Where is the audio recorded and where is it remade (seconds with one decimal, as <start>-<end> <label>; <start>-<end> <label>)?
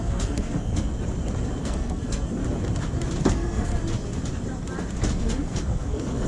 0.0-0.9 remade; 0.9-1.6 recorded; 1.6-2.4 remade; 2.4-3.3 recorded; 3.3-3.7 remade; 3.7-5.2 recorded; 5.2-6.3 remade